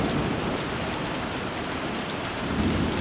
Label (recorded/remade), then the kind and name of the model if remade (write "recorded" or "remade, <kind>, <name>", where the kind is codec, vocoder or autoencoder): recorded